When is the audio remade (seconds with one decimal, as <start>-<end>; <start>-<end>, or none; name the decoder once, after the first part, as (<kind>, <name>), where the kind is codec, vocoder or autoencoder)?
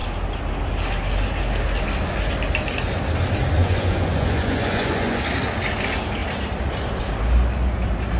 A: 3.6-5.2 (vocoder, Vocos)